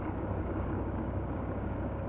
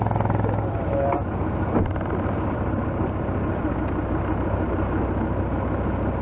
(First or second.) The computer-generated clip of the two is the first